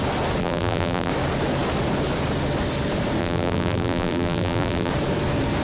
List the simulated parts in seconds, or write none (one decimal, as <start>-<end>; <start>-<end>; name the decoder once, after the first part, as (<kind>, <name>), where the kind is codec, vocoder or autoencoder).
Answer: 0.4-1.1 (vocoder, BigVGAN v2); 3.2-4.9